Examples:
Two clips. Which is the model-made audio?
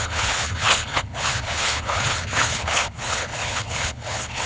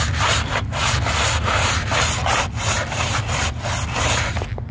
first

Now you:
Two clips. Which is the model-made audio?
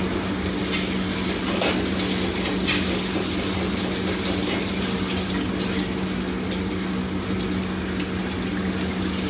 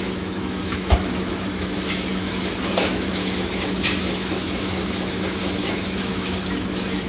second